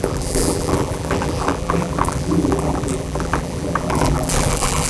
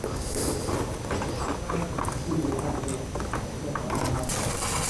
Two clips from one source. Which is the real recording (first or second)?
second